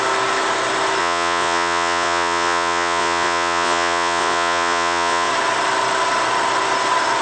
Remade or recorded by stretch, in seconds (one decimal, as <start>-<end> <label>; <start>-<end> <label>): 0.0-1.0 recorded; 1.0-5.3 remade; 5.3-7.2 recorded